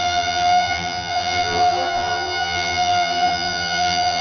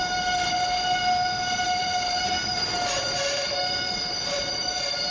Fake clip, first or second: first